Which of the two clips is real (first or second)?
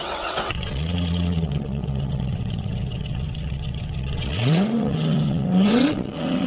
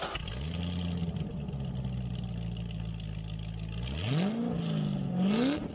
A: second